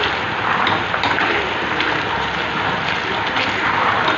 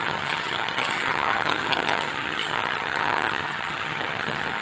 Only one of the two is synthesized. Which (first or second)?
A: second